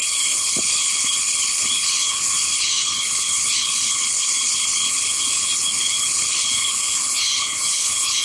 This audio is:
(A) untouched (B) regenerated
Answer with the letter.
B